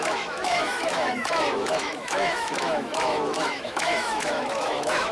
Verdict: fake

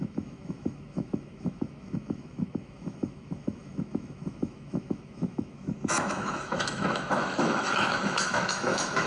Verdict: fake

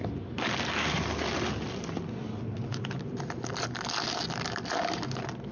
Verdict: real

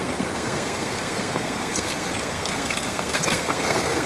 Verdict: fake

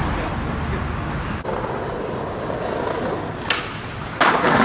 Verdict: real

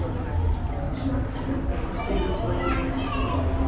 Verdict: real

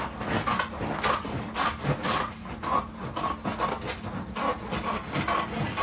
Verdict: real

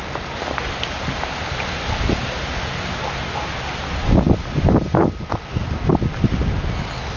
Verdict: real